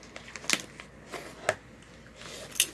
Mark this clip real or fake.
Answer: real